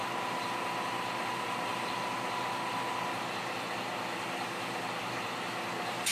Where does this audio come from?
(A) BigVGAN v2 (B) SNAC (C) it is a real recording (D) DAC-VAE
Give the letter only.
C